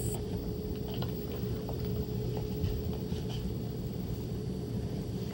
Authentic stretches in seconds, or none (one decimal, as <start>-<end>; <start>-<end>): 0.4-1.0; 1.9-4.3